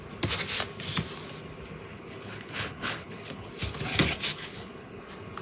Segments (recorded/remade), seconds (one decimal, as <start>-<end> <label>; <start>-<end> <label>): 0.0-1.9 recorded; 1.9-3.5 remade; 3.5-4.3 recorded; 4.3-5.0 remade; 5.0-5.4 recorded